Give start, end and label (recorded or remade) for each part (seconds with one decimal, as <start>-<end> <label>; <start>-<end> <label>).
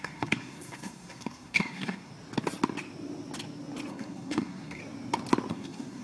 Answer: 0.0-2.1 remade; 2.1-3.9 recorded; 3.9-4.8 remade; 4.8-5.5 recorded; 5.5-6.0 remade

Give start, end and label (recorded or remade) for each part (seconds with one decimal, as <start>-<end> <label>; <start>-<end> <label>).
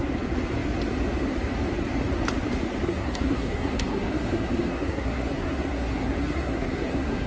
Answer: 0.0-2.8 recorded; 2.8-7.3 remade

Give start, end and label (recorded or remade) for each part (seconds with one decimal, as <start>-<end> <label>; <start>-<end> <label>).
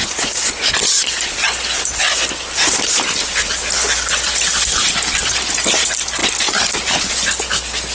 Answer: 0.0-7.9 recorded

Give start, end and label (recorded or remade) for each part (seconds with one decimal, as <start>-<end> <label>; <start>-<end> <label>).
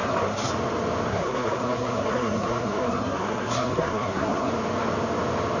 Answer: 0.0-0.5 remade; 0.5-1.1 recorded; 1.1-4.5 remade; 4.5-5.6 recorded